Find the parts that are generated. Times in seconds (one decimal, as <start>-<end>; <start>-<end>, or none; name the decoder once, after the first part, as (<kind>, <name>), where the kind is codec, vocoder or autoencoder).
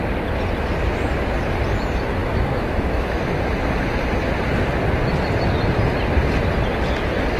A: 2.2-3.2 (autoencoder, DAC-VAE)